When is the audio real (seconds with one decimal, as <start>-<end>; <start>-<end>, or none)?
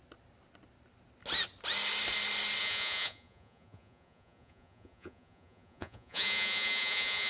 0.0-2.6